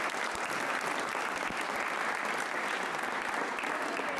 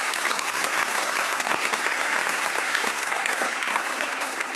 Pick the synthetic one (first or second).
second